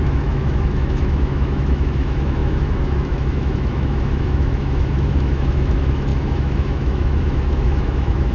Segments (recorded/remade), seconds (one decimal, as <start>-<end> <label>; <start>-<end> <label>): 0.0-8.3 remade